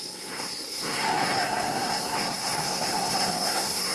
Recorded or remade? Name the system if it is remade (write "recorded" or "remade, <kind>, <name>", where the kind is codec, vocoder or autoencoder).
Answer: remade, codec, SNAC